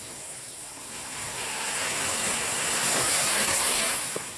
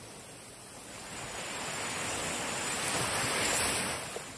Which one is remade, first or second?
first